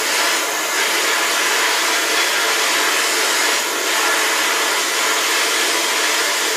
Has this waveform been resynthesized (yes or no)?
no